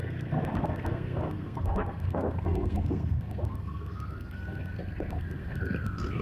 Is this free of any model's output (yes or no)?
no